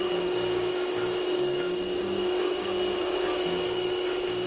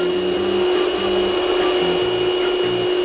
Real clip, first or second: second